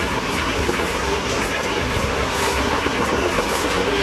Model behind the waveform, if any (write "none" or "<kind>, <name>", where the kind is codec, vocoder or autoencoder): codec, SNAC